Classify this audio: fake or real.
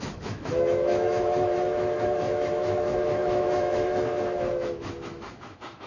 fake